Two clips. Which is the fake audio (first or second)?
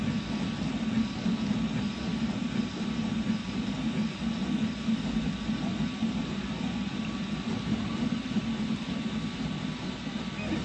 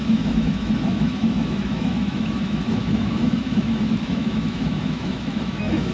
second